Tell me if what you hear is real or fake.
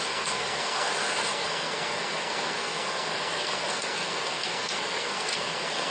fake